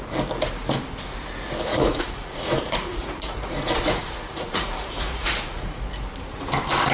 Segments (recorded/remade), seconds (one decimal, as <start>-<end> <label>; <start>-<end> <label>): 0.0-1.7 recorded; 1.7-5.8 remade; 5.8-6.9 recorded